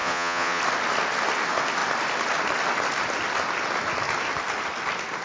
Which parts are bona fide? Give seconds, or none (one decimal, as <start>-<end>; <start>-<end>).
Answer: 0.6-5.2

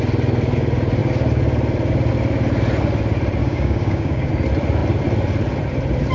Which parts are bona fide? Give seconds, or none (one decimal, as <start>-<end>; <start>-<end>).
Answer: 0.0-3.4; 4.3-6.1

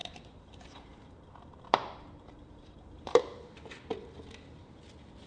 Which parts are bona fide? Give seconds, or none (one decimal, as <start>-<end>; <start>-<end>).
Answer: 3.2-5.3

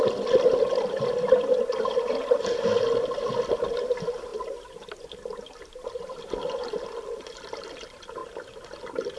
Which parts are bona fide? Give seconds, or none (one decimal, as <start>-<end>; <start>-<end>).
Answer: 0.0-9.2

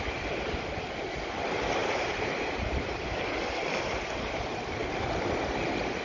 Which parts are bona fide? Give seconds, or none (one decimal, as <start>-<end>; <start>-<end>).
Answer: 0.0-1.8; 2.9-6.0

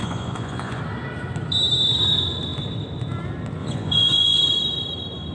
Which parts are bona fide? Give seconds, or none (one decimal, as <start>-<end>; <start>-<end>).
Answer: 0.8-3.6; 4.4-5.3

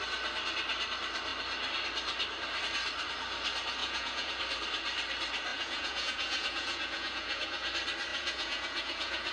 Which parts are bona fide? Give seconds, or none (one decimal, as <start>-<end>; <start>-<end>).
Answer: 0.0-3.8; 4.4-5.5; 7.7-8.1